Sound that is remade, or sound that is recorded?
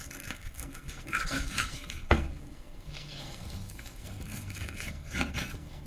remade